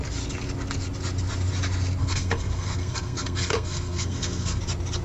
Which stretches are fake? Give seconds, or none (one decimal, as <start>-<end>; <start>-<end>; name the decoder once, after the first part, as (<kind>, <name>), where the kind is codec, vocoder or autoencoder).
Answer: 2.0-4.6 (codec, SNAC)